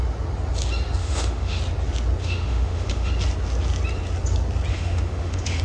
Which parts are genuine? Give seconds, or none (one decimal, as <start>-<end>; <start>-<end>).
0.0-1.0; 1.6-2.2; 3.1-4.7

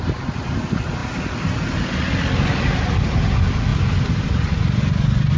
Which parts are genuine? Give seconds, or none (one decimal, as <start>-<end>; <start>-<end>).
0.0-3.7; 4.8-5.4

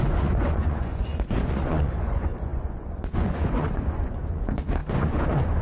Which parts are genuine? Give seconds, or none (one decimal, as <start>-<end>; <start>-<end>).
none

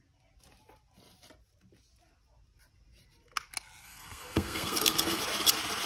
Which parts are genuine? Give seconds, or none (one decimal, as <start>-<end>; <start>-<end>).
0.0-3.8; 5.2-5.9

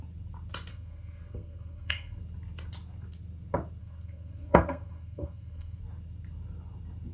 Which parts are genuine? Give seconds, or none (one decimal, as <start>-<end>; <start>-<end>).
0.0-0.7; 2.2-3.8; 5.8-7.1

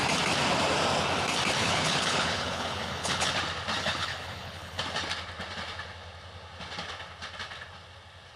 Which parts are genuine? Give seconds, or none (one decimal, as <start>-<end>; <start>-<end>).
0.0-1.6; 3.3-3.8; 4.8-8.4

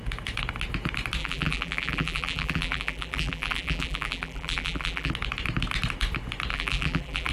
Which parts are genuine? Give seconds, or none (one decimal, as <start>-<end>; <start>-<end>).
0.0-1.2; 5.1-6.5

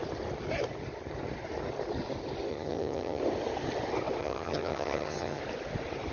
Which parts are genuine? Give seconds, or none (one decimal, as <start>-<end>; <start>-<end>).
0.0-2.5; 3.2-4.2; 5.4-6.1